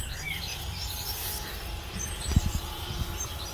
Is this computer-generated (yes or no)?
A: yes